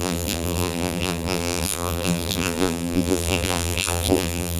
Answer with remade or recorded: remade